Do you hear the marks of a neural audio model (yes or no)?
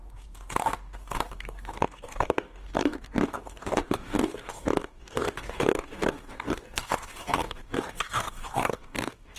yes